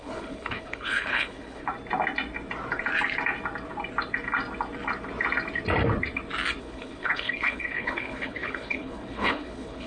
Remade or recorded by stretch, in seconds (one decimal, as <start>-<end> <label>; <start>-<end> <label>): 0.0-1.6 remade; 1.6-6.6 recorded; 6.6-9.9 remade